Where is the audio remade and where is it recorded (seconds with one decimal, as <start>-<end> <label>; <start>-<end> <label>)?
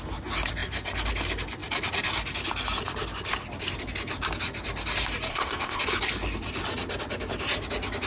0.0-5.3 recorded; 5.3-5.8 remade; 5.8-8.1 recorded